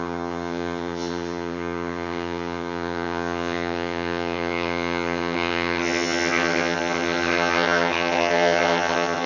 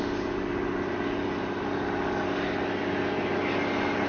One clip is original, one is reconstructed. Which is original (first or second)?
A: second